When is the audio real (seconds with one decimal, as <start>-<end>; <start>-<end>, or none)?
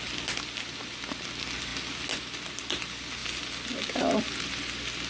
0.0-5.1